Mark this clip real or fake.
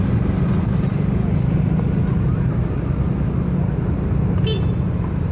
real